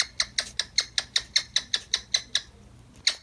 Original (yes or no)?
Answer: yes